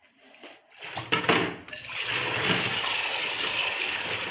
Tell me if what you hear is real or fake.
real